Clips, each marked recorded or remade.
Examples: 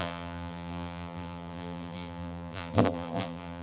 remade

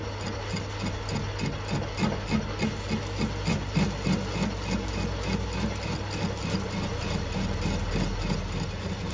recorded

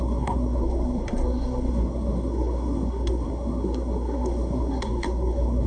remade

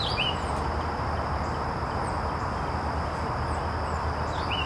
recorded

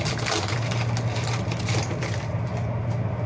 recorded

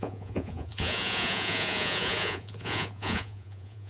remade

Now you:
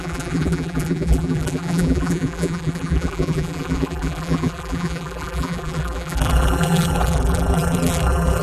remade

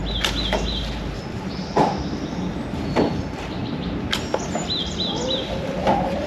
recorded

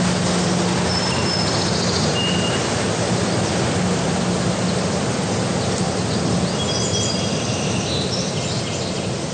recorded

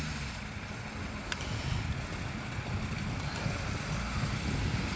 recorded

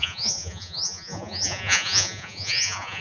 remade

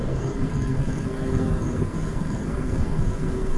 remade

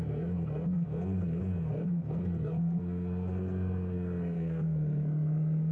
remade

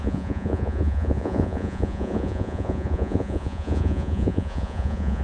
remade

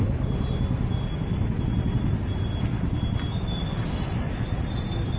recorded